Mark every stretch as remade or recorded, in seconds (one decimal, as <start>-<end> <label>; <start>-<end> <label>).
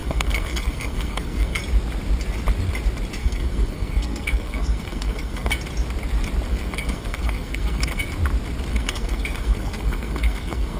0.0-1.6 remade; 1.6-3.2 recorded; 3.2-5.5 remade; 5.5-6.5 recorded; 6.5-8.0 remade; 8.0-8.7 recorded; 8.7-10.8 remade